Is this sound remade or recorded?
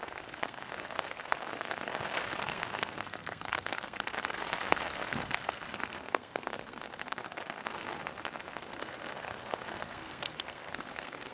remade